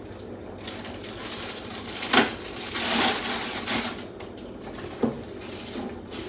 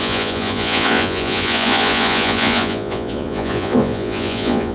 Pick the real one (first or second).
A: first